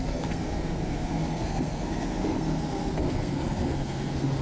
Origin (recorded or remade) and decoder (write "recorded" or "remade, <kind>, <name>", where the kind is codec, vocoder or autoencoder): remade, codec, SNAC